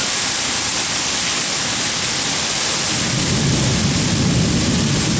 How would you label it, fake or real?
real